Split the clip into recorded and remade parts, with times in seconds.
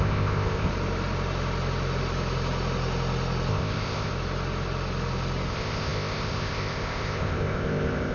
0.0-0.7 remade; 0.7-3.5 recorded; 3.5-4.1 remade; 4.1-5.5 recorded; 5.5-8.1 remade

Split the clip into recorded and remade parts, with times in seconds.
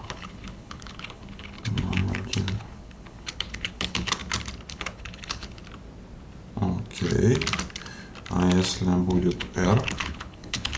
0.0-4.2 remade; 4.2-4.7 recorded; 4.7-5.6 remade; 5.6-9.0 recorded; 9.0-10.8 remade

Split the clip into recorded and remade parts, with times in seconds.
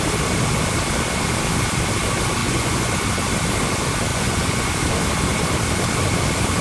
0.0-2.4 recorded; 2.4-2.9 remade; 2.9-4.1 recorded; 4.1-4.7 remade; 4.7-6.6 recorded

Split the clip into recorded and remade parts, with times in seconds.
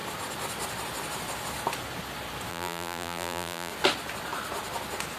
0.0-2.5 recorded; 2.5-3.7 remade; 3.7-5.2 recorded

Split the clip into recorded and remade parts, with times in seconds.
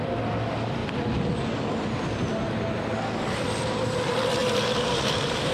0.0-4.4 recorded; 4.4-5.5 remade